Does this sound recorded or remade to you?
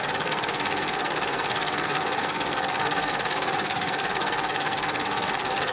remade